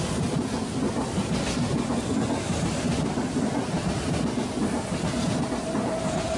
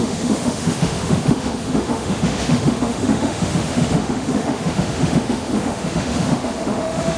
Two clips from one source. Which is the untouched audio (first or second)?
first